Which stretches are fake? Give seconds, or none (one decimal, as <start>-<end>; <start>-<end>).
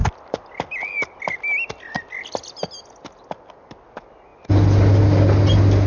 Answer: none